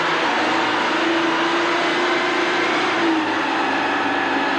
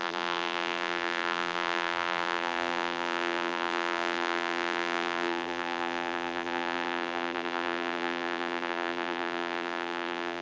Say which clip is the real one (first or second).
first